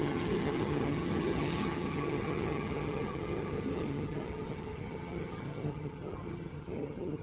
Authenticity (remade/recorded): remade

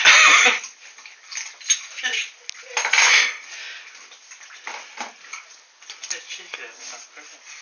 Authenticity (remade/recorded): recorded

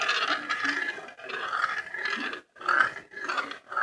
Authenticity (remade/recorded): recorded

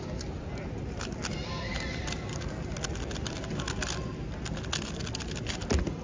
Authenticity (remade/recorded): recorded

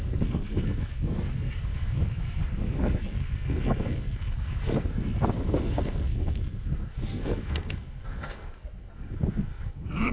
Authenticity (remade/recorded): remade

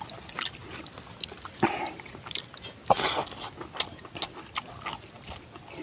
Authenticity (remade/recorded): recorded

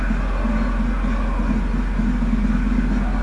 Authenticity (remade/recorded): recorded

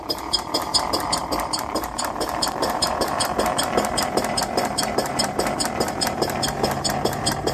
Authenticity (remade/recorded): remade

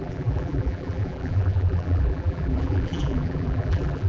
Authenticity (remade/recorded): remade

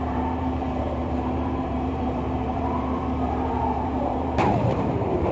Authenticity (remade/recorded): remade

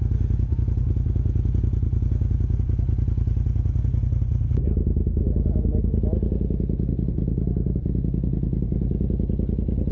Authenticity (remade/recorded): recorded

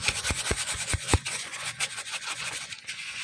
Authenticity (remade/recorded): remade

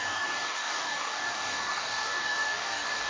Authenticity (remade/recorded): remade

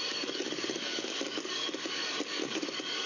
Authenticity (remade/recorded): remade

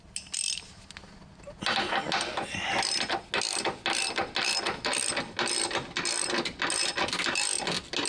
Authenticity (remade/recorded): recorded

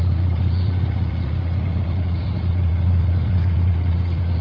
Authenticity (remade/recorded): remade